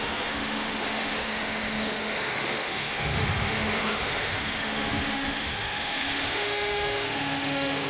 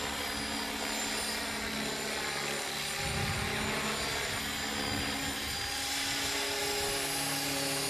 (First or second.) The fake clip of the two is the first